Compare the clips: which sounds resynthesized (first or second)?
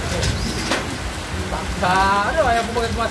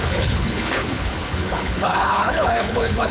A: second